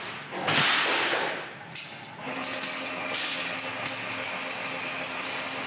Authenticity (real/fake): real